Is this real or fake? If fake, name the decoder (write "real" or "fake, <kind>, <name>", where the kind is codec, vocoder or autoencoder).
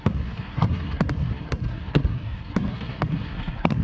fake, codec, SNAC